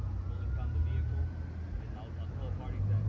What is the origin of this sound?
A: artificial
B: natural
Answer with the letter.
B